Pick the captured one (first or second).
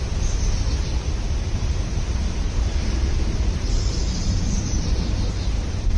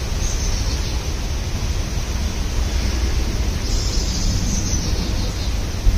second